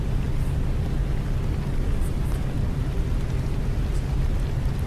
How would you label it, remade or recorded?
recorded